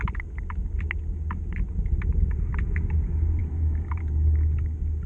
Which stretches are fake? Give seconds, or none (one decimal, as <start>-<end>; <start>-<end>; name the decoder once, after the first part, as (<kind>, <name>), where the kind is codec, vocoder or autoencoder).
3.4-3.9 (autoencoder, DAC-VAE)